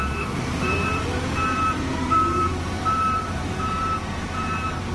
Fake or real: fake